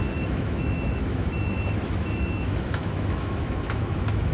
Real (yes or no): no